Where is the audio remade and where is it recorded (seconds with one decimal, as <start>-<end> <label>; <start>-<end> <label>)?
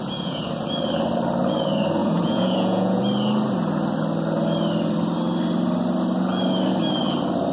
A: 0.0-0.5 remade; 0.5-2.0 recorded; 2.0-3.0 remade; 3.0-7.5 recorded